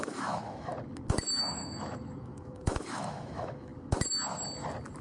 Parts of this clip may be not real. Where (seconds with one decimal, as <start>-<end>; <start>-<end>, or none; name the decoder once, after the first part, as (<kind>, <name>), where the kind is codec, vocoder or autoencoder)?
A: 0.0-0.7 (autoencoder, DAC-VAE); 1.4-3.7